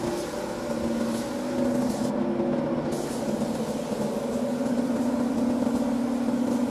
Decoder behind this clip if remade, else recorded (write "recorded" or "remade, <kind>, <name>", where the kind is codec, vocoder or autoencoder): recorded